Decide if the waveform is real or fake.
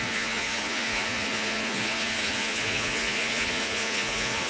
fake